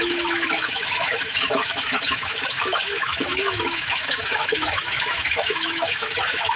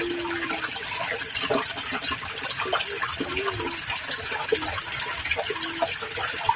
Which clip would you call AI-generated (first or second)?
first